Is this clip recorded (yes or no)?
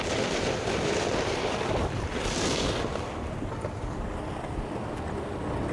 yes